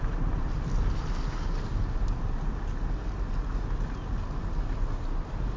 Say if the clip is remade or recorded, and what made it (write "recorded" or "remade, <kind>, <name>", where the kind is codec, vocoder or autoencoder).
recorded